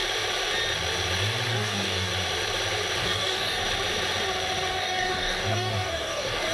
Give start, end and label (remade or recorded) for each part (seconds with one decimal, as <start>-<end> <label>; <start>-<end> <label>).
0.0-1.5 recorded; 1.5-2.1 remade; 2.1-3.0 recorded; 3.0-3.6 remade; 3.6-4.7 recorded; 4.7-6.5 remade